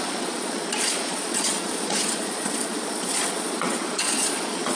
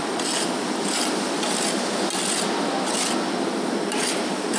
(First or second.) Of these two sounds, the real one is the second